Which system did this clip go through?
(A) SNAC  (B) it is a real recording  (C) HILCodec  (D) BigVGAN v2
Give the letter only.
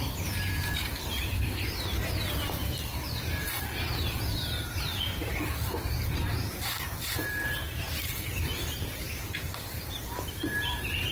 D